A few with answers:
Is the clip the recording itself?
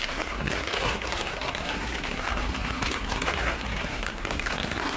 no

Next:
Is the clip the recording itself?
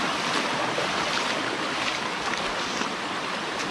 yes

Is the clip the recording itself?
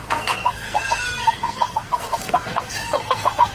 no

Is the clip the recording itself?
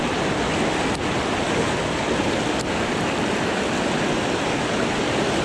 yes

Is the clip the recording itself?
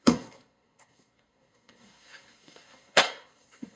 no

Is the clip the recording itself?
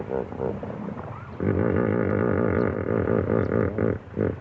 yes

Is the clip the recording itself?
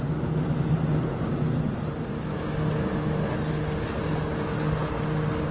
yes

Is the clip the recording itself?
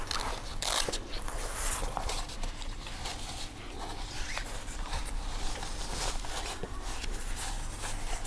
yes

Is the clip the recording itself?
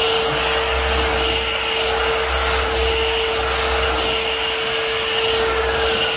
yes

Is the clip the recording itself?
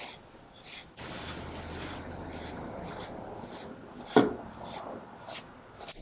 yes